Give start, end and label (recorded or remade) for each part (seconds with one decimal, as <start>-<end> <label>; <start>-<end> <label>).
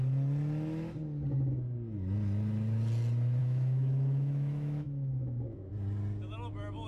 0.0-3.4 recorded; 3.4-5.7 remade; 5.7-6.9 recorded